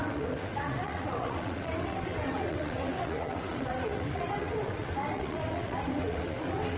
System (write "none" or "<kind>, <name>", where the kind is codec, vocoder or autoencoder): vocoder, WaveNeXt